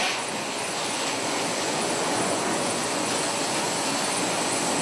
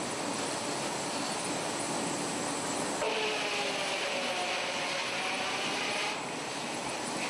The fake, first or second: first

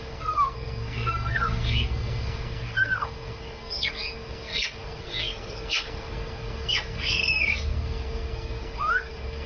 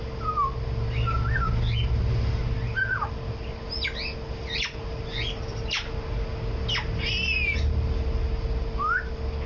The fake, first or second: first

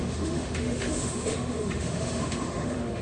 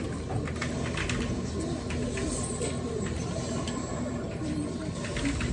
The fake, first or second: first